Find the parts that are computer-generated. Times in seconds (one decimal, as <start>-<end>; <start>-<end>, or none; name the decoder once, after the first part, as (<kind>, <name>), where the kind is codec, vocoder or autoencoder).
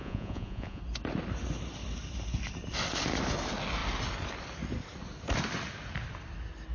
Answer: 0.0-0.8 (vocoder, Vocos)